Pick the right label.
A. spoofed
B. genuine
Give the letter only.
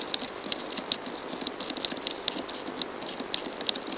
B